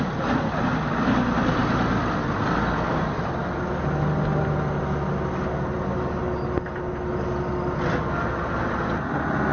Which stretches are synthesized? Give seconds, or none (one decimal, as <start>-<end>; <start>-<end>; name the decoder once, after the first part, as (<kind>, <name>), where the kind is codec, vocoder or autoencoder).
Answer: none